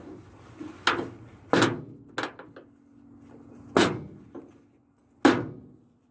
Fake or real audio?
real